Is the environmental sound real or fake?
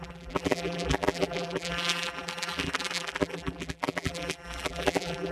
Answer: fake